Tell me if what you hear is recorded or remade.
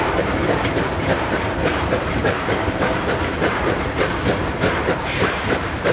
remade